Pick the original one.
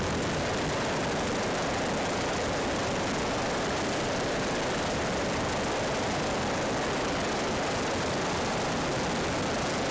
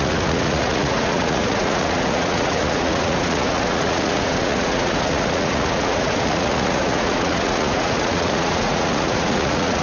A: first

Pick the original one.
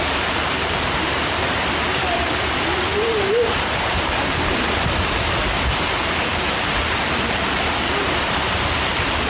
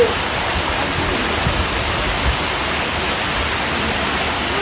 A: second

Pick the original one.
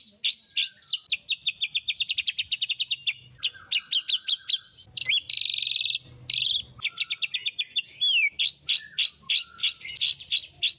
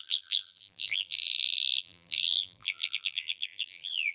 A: first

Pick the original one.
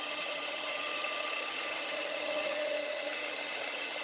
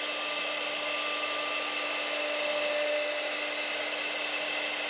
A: second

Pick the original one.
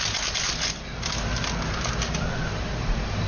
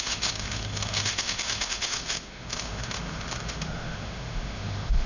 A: first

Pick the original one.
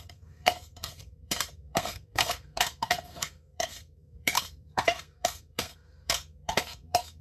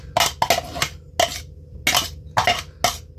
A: second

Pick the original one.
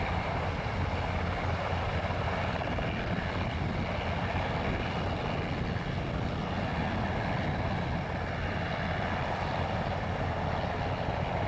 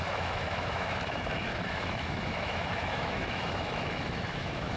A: first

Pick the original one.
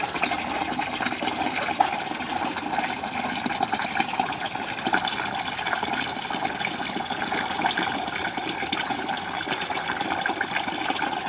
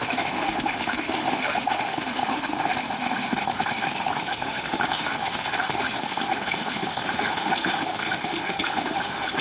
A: first